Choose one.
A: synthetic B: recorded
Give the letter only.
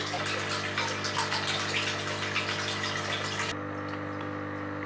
B